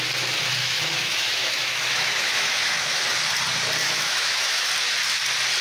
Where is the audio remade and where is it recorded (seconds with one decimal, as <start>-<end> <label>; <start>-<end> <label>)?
0.0-0.6 recorded; 0.6-3.0 remade; 3.0-3.8 recorded; 3.8-4.7 remade; 4.7-5.6 recorded